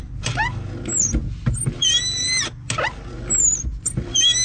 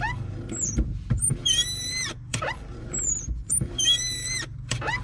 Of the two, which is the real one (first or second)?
first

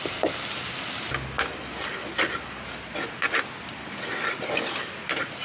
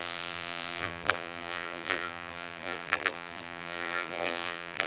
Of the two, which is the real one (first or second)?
first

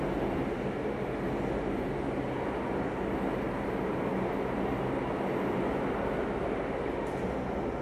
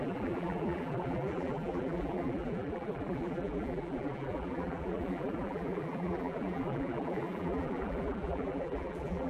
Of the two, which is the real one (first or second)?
first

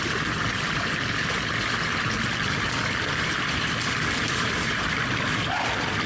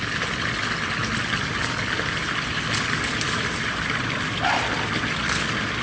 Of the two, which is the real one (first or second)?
second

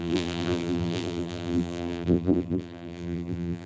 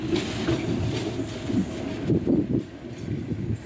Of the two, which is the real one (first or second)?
second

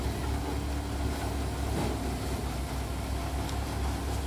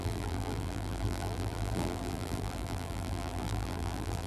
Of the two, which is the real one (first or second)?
first